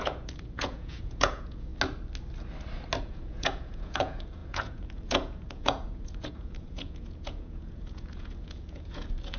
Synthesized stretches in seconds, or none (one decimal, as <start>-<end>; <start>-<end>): 0.0-1.7; 3.0-9.4